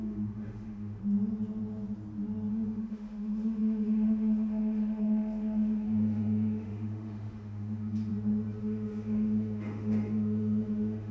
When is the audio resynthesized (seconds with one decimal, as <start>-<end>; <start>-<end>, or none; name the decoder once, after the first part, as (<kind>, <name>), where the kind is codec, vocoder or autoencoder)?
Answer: 0.0-1.0 (autoencoder, DAC-VAE); 2.5-8.1; 8.6-11.1